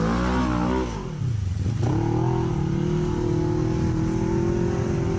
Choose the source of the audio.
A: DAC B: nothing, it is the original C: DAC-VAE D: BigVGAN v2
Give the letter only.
B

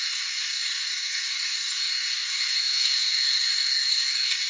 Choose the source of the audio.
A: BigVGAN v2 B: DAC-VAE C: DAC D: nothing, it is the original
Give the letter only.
C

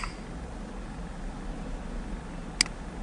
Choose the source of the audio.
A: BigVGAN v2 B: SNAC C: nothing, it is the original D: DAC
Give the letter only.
C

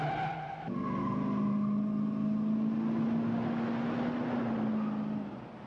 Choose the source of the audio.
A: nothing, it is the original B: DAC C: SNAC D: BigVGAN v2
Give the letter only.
A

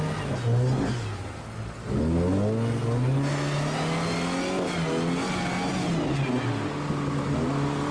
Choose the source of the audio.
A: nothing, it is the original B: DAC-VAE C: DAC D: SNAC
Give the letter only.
A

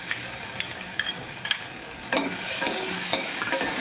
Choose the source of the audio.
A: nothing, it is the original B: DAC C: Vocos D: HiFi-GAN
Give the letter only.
B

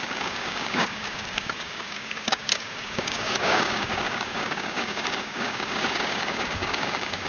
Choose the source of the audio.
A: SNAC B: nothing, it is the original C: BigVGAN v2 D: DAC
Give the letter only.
D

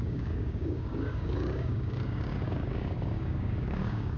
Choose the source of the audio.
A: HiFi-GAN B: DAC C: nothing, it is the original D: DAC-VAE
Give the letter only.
B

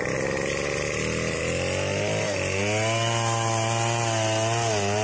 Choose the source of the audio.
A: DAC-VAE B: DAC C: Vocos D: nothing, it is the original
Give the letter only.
D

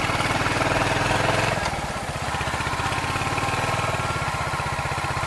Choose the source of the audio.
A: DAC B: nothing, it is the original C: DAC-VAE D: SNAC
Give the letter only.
B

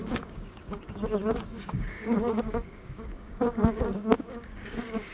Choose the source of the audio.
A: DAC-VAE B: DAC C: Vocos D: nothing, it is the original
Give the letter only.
B